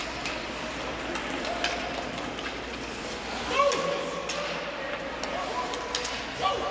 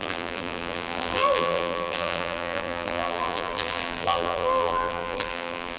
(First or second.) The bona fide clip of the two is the first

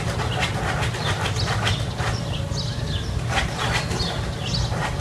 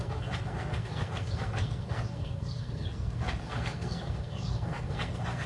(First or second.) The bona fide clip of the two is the first